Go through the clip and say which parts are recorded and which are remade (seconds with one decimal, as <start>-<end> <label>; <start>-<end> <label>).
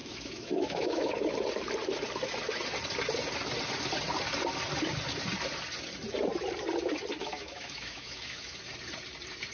0.0-1.1 remade; 1.1-7.2 recorded; 7.2-8.6 remade; 8.6-9.5 recorded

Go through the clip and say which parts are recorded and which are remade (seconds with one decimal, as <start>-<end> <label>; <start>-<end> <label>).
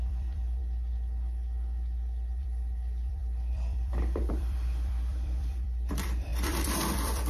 0.0-0.6 remade; 0.6-2.4 recorded; 2.4-7.3 remade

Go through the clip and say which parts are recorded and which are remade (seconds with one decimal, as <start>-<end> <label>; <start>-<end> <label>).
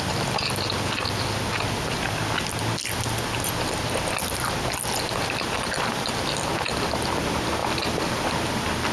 0.0-7.6 recorded; 7.6-8.2 remade; 8.2-8.9 recorded